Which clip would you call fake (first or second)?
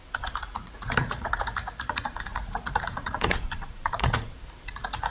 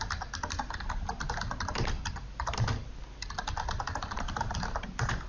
first